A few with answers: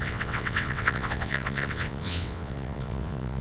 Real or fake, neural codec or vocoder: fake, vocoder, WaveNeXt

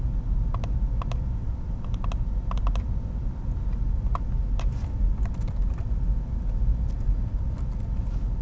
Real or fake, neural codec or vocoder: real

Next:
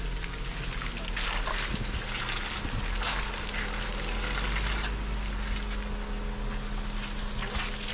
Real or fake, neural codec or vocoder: real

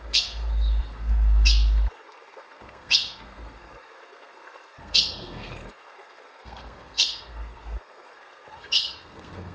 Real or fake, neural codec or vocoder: fake, codec, SNAC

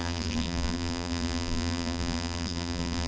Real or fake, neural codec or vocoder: fake, vocoder, BigVGAN v2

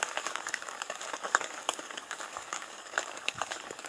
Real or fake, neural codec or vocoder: fake, codec, DAC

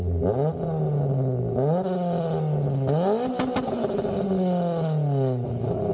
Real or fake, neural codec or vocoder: real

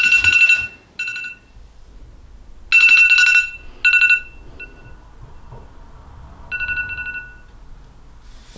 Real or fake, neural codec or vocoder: real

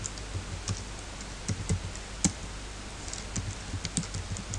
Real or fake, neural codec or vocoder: real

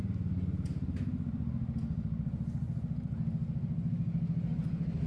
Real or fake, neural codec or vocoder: real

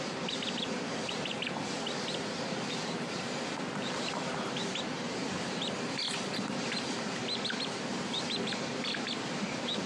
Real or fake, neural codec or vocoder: fake, vocoder, BigVGAN v2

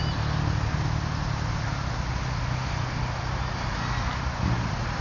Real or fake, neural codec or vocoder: real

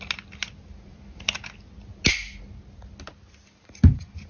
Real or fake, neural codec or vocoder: real